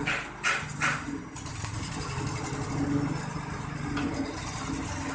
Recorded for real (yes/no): yes